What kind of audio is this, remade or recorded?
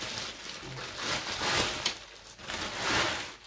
recorded